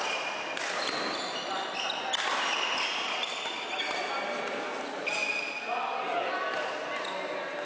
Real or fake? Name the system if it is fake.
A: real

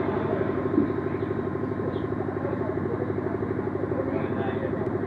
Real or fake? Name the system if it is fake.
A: real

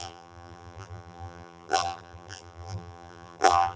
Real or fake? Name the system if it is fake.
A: fake, vocoder, BigVGAN v2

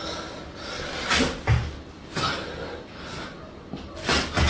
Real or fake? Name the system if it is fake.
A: real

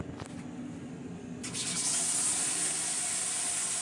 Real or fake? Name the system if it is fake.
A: real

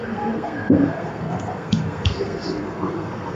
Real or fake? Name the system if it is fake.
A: fake, codec, SNAC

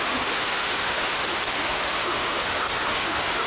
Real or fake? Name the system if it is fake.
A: fake, autoencoder, DAC-VAE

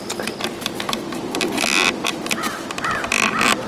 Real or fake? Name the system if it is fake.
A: real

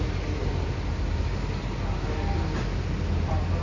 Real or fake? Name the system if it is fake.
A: real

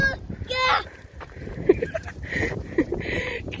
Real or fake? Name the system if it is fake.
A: fake, vocoder, BigVGAN v2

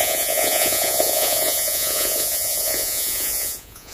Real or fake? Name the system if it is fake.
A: fake, vocoder, Vocos